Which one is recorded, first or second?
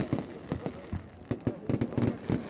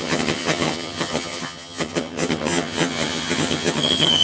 first